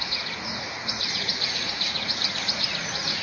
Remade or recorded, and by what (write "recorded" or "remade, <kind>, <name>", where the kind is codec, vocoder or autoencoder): remade, vocoder, Vocos